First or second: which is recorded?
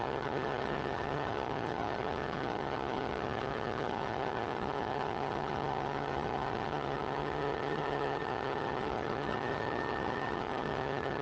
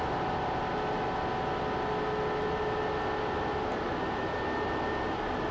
second